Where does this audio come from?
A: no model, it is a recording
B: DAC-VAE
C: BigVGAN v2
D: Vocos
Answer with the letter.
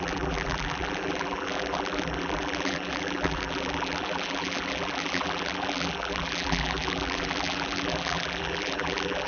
C